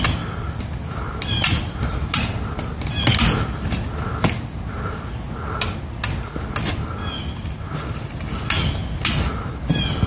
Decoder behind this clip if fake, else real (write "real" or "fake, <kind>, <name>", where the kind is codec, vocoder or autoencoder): real